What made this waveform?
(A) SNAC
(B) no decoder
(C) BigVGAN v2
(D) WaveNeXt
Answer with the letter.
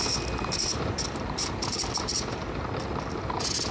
B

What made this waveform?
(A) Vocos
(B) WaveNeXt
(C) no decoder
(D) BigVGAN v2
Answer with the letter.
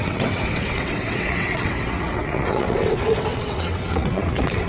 B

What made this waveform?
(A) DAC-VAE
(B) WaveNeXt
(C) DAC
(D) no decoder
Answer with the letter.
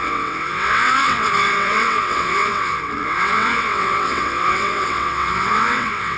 B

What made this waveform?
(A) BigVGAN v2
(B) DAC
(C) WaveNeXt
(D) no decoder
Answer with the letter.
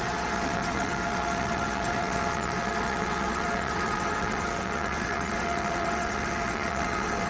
C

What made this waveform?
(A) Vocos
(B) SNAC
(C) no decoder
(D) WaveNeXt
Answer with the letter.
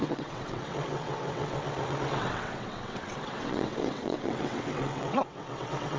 D